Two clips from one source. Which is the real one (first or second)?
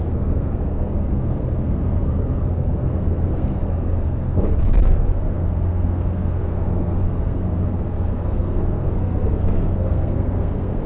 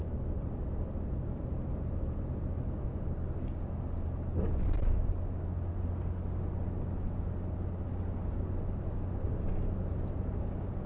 second